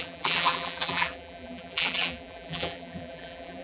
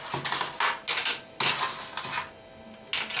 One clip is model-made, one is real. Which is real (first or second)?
second